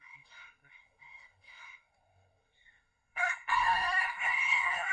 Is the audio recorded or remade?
remade